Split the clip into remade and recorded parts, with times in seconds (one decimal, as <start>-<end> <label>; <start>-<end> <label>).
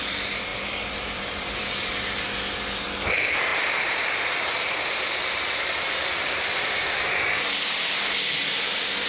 0.0-0.5 recorded; 0.5-1.9 remade; 1.9-3.5 recorded; 3.5-6.9 remade; 6.9-9.1 recorded